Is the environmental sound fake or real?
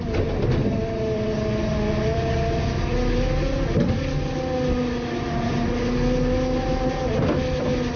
real